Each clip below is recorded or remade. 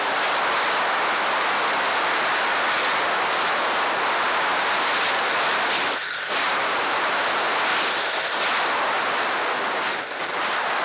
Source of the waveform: recorded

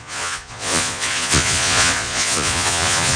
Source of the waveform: remade